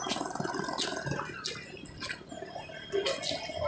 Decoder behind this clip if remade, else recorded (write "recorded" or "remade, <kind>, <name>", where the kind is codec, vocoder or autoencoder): recorded